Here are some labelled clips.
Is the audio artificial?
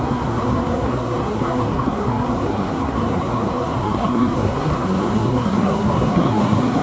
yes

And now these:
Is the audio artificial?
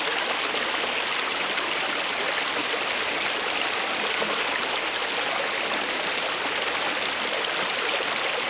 no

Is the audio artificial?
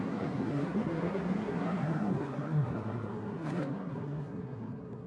yes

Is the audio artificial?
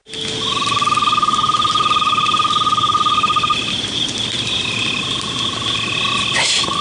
no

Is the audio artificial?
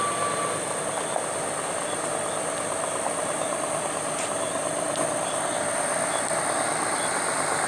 no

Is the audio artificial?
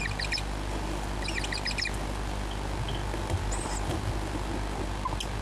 no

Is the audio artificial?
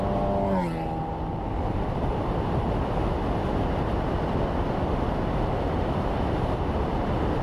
no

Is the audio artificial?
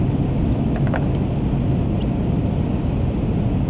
no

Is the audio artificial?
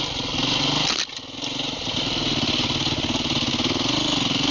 no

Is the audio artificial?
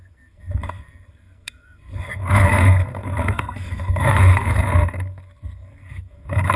yes